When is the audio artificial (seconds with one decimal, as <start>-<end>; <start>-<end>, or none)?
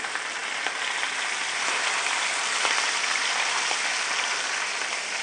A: none